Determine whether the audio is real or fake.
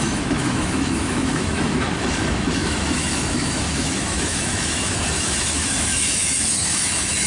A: fake